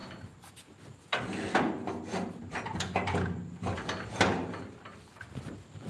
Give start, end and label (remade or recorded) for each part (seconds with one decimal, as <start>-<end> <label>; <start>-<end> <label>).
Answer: 0.0-5.9 recorded